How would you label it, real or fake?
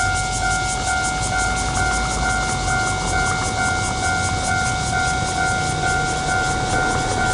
real